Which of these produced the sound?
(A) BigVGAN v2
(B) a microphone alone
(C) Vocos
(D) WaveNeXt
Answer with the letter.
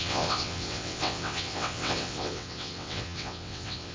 D